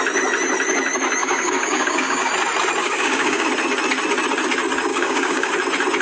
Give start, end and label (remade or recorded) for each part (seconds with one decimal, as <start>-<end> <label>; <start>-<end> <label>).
0.0-1.2 recorded; 1.2-2.3 remade; 2.3-2.8 recorded; 2.8-3.5 remade; 3.5-4.9 recorded; 4.9-5.5 remade; 5.5-6.0 recorded